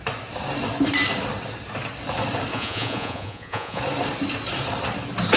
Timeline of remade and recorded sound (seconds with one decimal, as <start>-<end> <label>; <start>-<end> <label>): 0.0-2.5 recorded; 2.5-3.8 remade; 3.8-5.4 recorded